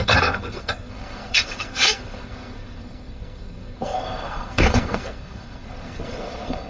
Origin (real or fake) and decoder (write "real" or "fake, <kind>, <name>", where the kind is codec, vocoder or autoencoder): fake, codec, SNAC